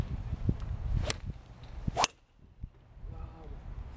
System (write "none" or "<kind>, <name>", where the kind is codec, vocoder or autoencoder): none